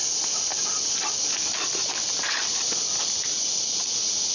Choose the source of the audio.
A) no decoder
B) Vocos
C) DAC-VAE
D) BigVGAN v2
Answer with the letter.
D